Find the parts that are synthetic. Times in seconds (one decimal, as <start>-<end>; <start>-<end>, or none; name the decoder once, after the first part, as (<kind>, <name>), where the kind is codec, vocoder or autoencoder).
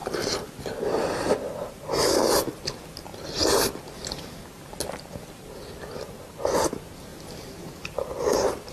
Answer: 0.0-0.6 (vocoder, BigVGAN v2); 7.1-8.1